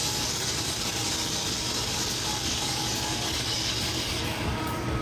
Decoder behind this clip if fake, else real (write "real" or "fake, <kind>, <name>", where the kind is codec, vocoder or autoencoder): fake, codec, DAC